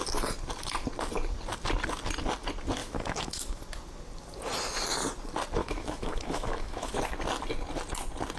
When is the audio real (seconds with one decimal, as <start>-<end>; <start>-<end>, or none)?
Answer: 0.0-2.8; 3.6-5.6; 7.1-8.4